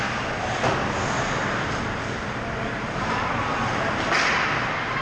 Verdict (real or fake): real